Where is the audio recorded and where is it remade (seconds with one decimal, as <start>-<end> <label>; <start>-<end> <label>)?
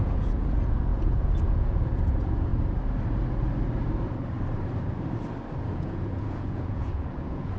0.0-2.5 remade; 2.5-5.7 recorded; 5.7-7.6 remade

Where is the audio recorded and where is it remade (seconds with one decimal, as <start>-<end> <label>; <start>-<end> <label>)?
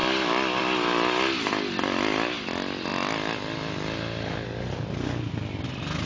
0.0-6.1 recorded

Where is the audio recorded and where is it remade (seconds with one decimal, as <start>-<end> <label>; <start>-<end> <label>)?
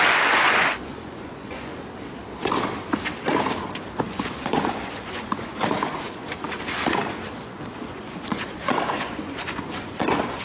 0.0-1.7 remade; 1.7-4.1 recorded; 4.1-6.4 remade; 6.4-7.4 recorded; 7.4-10.4 remade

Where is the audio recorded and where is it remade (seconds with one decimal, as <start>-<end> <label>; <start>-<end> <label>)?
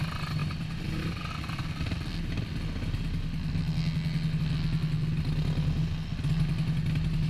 0.0-7.3 recorded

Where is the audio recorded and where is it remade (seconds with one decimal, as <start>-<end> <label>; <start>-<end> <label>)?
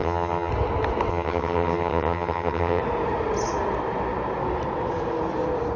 0.0-0.5 remade; 0.5-1.1 recorded; 1.1-2.8 remade; 2.8-5.8 recorded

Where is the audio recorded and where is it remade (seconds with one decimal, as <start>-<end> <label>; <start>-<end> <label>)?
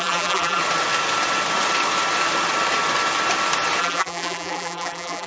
0.0-0.6 remade; 0.6-3.8 recorded; 3.8-5.3 remade